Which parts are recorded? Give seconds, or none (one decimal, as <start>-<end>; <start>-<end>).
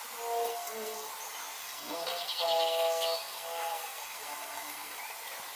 0.0-0.5; 1.1-1.6; 5.0-5.6